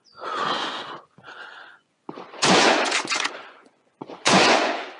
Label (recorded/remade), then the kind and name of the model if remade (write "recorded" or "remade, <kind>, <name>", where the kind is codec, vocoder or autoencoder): remade, vocoder, Vocos